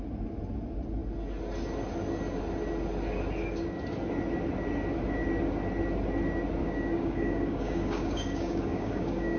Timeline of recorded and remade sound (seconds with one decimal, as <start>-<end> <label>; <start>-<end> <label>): 0.0-6.6 recorded; 6.6-9.4 remade